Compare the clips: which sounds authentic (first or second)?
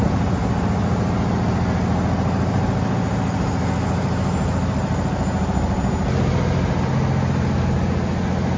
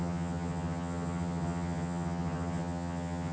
first